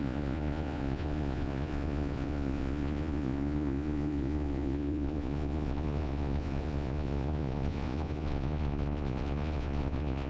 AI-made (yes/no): yes